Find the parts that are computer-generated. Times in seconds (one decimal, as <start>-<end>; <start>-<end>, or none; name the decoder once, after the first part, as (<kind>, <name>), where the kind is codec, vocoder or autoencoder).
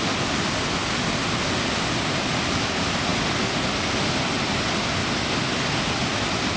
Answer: none